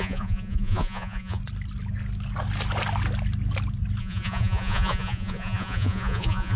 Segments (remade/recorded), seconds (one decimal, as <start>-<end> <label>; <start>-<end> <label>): 0.0-1.4 remade; 1.4-4.0 recorded; 4.0-6.6 remade